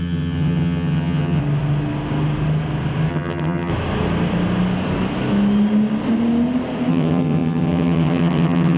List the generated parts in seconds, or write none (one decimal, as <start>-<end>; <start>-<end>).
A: 0.0-1.4; 3.1-3.7; 6.9-8.8